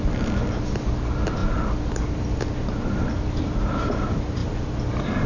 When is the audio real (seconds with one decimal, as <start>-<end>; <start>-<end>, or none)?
0.0-4.4